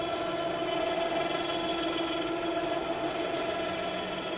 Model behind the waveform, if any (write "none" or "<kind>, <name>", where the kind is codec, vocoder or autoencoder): none